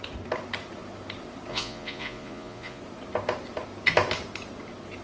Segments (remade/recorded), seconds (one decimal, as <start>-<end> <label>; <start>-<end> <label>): 0.0-1.5 recorded; 1.5-2.8 remade; 2.8-5.0 recorded